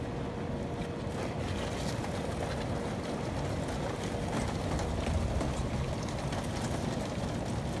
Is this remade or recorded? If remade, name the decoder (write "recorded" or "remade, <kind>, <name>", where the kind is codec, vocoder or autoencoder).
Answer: recorded